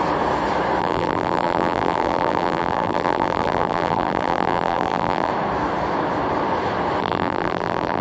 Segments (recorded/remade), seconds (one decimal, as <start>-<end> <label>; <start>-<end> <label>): 0.0-0.8 recorded; 0.8-5.3 remade; 5.3-7.0 recorded; 7.0-8.0 remade